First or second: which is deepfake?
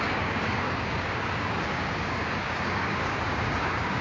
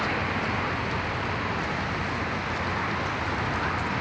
first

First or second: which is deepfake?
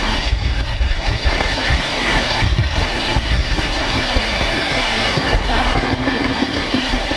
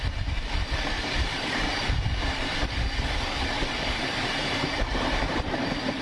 first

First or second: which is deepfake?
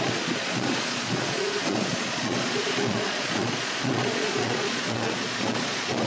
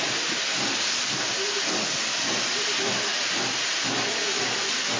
first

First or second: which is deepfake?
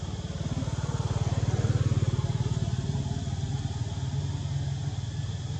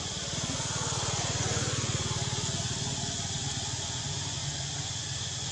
second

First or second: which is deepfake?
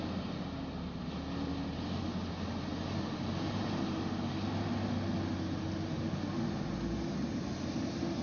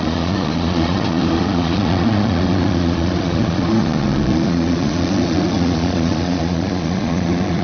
second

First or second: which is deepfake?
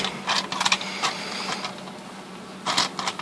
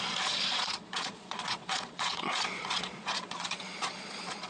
second